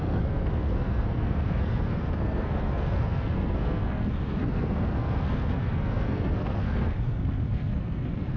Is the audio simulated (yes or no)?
yes